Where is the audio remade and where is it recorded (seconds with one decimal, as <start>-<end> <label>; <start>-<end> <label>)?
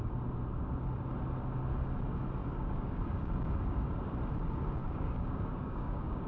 0.0-2.4 recorded; 2.4-3.9 remade; 3.9-4.8 recorded; 4.8-6.3 remade